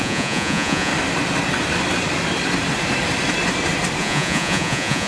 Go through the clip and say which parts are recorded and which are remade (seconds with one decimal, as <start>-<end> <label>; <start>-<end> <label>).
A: 0.0-0.9 remade; 0.9-4.0 recorded; 4.0-5.1 remade

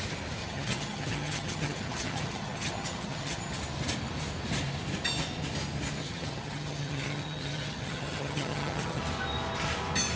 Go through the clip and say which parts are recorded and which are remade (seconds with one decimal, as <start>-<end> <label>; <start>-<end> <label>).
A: 0.0-0.4 recorded; 0.4-3.6 remade; 3.6-6.0 recorded; 6.0-9.0 remade; 9.0-10.2 recorded